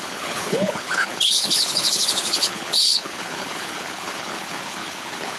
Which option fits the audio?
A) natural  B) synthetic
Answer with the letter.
B